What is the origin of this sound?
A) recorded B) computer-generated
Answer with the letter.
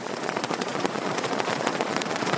B